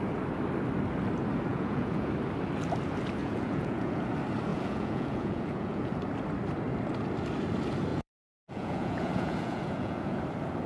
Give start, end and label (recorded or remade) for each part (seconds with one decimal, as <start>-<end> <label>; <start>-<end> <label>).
0.0-1.5 recorded; 1.5-2.1 remade; 2.1-3.2 recorded; 3.2-4.0 remade; 4.0-4.5 recorded; 4.5-5.9 remade; 5.9-7.9 recorded; 7.9-10.2 remade; 10.2-10.7 recorded